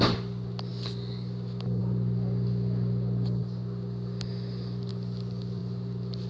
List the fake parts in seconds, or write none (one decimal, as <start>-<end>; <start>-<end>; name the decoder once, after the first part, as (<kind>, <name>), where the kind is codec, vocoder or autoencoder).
none